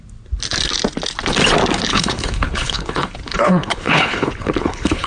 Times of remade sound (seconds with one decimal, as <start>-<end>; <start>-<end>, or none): 1.9-5.1